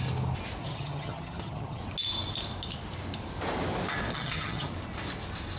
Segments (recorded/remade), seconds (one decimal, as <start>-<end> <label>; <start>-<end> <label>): 0.0-0.6 recorded; 0.6-1.8 remade; 1.8-4.1 recorded; 4.1-4.7 remade; 4.7-5.6 recorded